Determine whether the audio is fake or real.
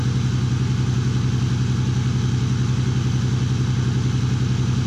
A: real